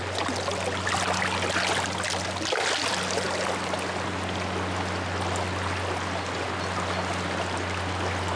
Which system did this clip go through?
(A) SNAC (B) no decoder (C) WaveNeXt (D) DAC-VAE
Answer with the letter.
B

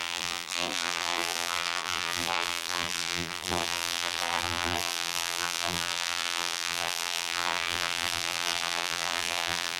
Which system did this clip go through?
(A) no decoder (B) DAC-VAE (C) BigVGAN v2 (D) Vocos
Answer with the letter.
C